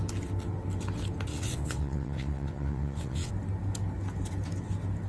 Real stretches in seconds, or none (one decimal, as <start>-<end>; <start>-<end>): 0.0-1.3; 3.3-5.1